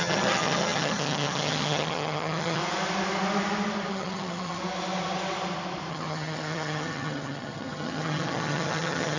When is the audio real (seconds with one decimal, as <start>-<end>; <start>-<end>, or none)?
2.6-3.9; 4.6-5.9